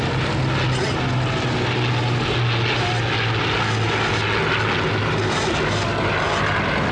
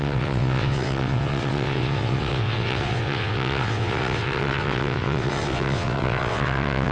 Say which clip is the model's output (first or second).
second